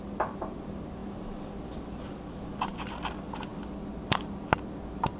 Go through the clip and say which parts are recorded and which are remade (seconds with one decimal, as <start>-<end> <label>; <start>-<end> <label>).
0.0-1.0 recorded; 1.0-1.6 remade; 1.6-5.2 recorded